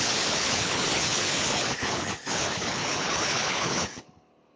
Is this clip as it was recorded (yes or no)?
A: no